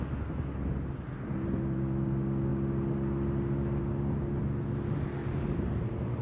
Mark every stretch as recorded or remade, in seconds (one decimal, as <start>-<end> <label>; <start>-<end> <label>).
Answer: 0.0-5.2 recorded; 5.2-6.2 remade